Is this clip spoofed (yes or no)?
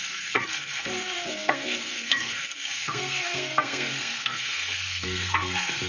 yes